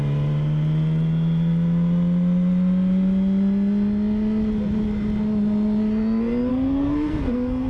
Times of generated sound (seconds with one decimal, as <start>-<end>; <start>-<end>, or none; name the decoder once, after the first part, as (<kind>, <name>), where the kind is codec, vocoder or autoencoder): 6.5-7.7 (codec, SNAC)